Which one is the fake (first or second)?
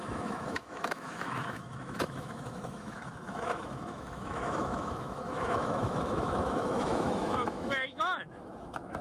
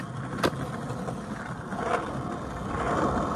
first